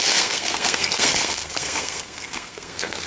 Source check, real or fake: fake